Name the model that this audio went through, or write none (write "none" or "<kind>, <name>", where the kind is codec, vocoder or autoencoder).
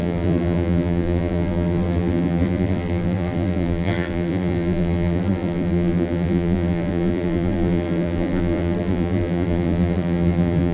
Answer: vocoder, BigVGAN v2